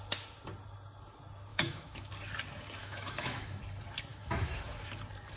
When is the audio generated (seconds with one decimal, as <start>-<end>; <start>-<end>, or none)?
1.5-2.1; 2.8-3.6; 4.1-4.9